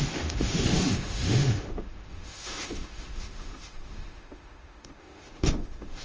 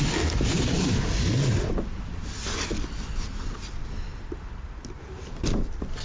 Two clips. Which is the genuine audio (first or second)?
second